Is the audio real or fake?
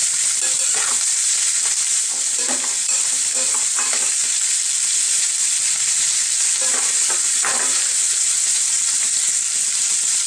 fake